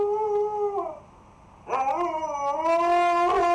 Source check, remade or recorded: recorded